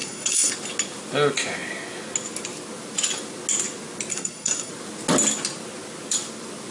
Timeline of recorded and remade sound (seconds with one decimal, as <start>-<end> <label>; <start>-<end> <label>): 0.0-0.5 remade; 0.5-4.1 recorded; 4.1-4.7 remade; 4.7-6.7 recorded